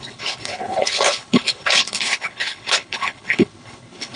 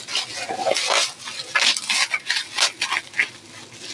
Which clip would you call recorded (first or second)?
second